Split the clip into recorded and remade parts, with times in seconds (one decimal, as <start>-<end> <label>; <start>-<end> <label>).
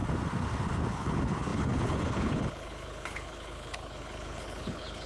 0.0-0.9 recorded; 0.9-5.1 remade